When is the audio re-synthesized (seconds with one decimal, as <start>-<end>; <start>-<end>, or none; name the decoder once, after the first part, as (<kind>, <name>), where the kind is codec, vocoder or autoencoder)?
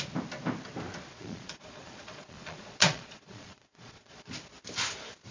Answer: 1.1-4.3 (vocoder, Vocos)